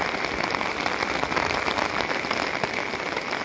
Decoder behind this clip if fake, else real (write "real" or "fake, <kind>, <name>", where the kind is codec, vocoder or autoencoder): real